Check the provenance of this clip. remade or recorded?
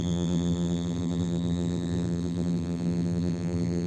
remade